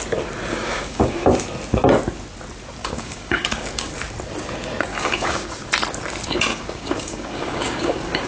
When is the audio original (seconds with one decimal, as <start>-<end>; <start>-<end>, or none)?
0.0-0.5; 1.3-2.8; 3.9-4.9; 5.5-6.5